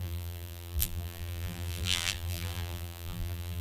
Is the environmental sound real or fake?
fake